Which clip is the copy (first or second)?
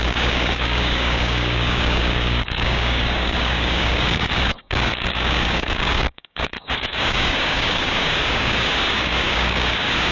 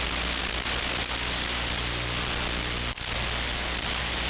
first